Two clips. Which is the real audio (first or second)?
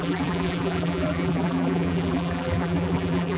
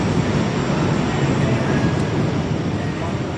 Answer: second